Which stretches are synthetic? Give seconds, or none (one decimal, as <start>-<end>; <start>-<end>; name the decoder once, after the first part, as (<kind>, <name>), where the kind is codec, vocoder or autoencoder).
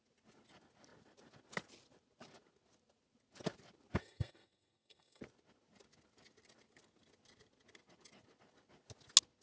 4.0-5.2 (codec, SNAC)